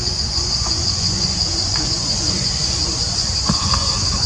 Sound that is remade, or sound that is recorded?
remade